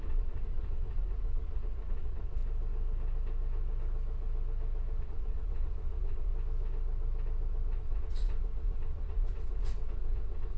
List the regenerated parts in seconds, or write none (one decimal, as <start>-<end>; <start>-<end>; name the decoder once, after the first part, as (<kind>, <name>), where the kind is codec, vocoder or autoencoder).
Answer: 0.0-2.4 (vocoder, WaveNeXt); 5.0-6.3; 7.8-10.6